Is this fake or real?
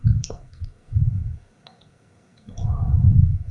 fake